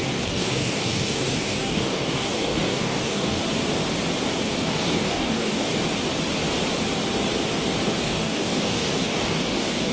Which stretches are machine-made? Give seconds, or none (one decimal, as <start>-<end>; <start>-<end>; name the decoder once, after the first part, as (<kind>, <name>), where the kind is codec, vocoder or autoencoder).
0.0-3.4 (codec, DAC); 4.6-5.7; 8.0-9.9